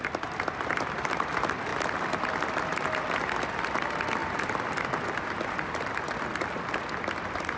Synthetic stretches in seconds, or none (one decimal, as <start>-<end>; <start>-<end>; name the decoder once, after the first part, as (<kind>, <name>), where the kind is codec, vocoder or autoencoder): none